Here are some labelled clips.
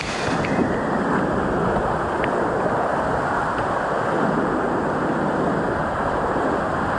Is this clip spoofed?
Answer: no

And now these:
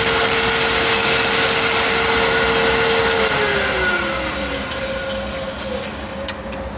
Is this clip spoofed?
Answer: no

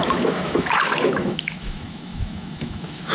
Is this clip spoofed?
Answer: yes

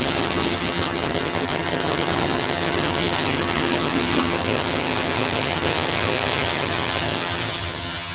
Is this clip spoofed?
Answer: yes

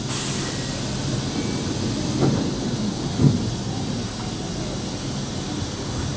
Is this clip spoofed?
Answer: no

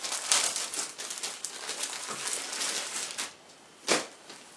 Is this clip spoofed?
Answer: no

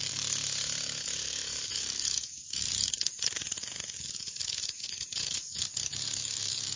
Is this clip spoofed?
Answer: yes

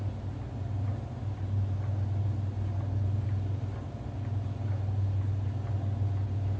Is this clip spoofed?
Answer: no